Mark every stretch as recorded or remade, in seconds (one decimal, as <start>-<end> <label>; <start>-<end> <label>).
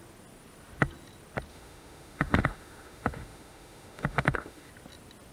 0.0-1.5 recorded; 1.5-4.7 remade; 4.7-5.3 recorded